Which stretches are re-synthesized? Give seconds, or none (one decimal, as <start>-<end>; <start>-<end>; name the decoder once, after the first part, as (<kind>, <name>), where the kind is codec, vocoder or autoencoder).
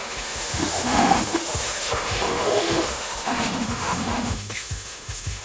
0.0-5.4 (autoencoder, DAC-VAE)